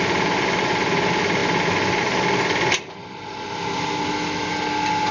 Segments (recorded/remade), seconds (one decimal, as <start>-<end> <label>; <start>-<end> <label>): 0.0-5.1 recorded